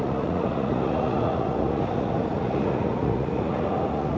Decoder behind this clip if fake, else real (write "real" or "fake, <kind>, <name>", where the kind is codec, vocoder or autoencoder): fake, vocoder, Vocos